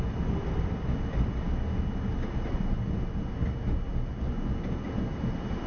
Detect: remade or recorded recorded